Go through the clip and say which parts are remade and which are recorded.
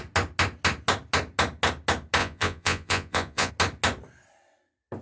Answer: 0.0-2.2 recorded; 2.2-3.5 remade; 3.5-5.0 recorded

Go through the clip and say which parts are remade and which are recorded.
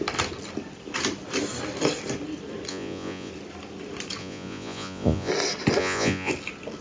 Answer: 0.0-2.7 recorded; 2.7-3.3 remade; 3.3-4.2 recorded; 4.2-5.3 remade; 5.3-5.8 recorded; 5.8-6.3 remade; 6.3-6.8 recorded